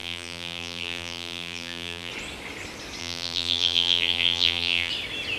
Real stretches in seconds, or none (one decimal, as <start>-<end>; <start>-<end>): 2.1-3.0; 4.9-5.4